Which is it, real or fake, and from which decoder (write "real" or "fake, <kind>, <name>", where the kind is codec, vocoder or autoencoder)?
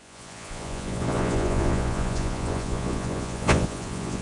fake, vocoder, Vocos